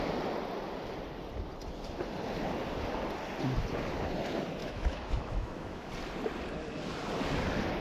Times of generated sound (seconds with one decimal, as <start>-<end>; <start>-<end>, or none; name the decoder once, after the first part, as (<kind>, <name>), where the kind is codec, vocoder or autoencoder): 4.6-5.9 (autoencoder, DAC-VAE)